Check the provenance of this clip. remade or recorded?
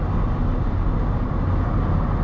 recorded